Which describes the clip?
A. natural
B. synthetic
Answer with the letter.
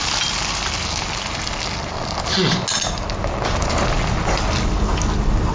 A